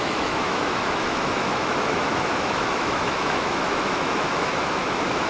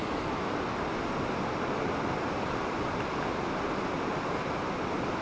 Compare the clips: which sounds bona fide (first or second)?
second